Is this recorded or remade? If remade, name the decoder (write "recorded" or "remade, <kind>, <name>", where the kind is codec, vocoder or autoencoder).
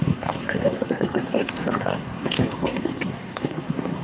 remade, codec, SNAC